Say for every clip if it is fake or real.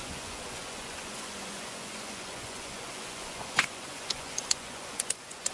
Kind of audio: fake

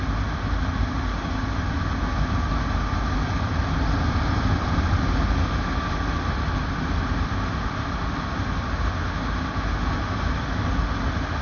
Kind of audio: real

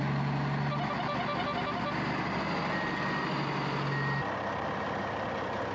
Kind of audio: real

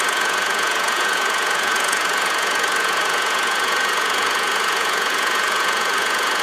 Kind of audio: fake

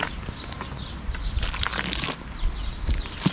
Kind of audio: real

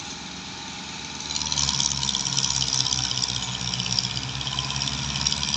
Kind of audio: real